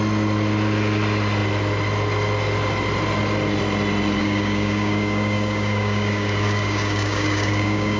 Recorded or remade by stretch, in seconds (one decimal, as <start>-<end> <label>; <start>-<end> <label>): 0.0-4.2 recorded; 4.2-8.0 remade